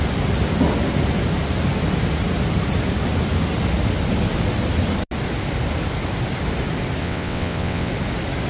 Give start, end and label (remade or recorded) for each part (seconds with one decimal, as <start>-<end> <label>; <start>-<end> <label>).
0.0-7.0 recorded; 7.0-7.9 remade; 7.9-8.5 recorded